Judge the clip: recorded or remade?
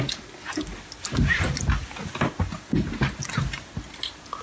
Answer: recorded